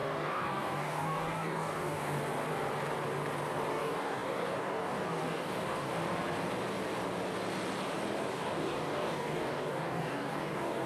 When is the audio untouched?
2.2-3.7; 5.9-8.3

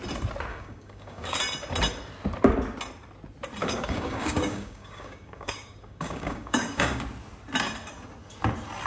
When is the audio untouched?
0.0-0.5; 1.4-3.6; 7.0-8.9

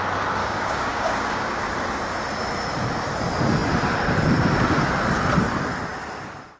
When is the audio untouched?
0.0-0.4; 1.6-6.6

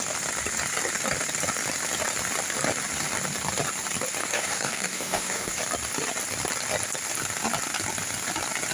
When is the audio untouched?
0.0-4.2; 5.6-8.7